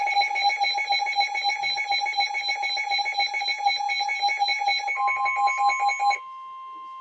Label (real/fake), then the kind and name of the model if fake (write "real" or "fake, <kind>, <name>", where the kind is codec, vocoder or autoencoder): real